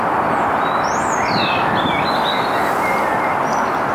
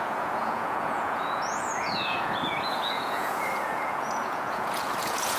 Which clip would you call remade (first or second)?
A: second